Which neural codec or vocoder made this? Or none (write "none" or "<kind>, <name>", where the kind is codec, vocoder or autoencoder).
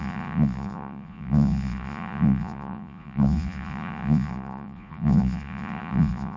vocoder, Vocos